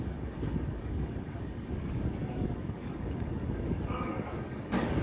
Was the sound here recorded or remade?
remade